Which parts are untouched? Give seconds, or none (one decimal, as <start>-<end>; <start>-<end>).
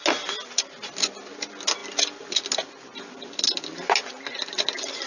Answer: 0.0-5.1